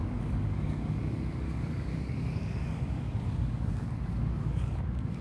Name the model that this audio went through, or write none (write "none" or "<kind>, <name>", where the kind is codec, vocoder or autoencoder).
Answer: codec, DAC